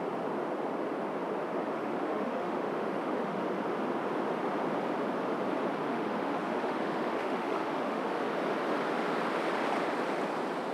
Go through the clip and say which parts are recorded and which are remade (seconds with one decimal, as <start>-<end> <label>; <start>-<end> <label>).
0.0-1.6 recorded; 1.6-3.4 remade; 3.4-5.9 recorded; 5.9-8.2 remade; 8.2-10.7 recorded